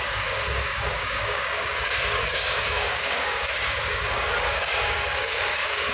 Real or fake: fake